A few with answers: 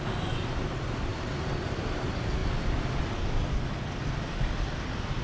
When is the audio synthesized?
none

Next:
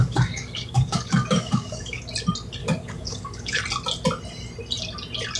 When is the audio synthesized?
0.0-2.0 (codec, DAC); 2.6-3.6

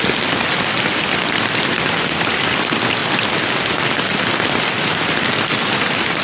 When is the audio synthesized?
none

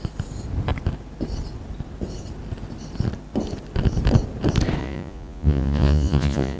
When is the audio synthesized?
4.8-6.6 (vocoder, Vocos)

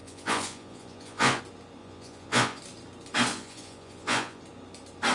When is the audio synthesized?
0.0-1.4 (vocoder, Vocos); 1.8-2.6; 3.3-4.4